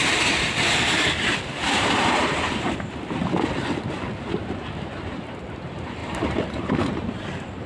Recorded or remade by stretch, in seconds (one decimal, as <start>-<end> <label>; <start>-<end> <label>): 0.0-3.2 remade; 3.2-4.2 recorded; 4.2-7.7 remade